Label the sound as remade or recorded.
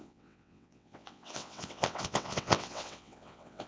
remade